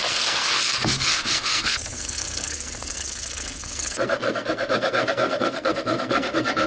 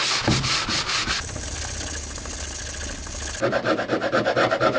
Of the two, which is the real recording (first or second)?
second